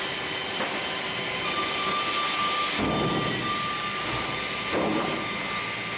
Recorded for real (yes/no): yes